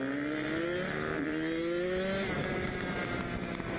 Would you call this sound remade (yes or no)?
no